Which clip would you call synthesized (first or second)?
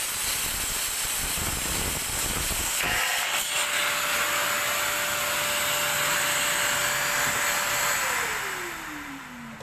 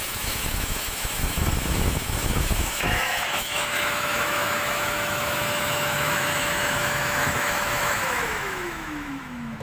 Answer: second